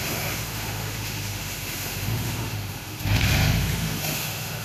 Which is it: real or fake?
fake